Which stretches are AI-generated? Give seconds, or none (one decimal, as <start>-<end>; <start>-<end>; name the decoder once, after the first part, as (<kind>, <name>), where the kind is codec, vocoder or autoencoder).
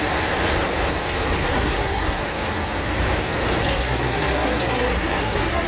1.4-2.2 (codec, SNAC); 3.7-5.7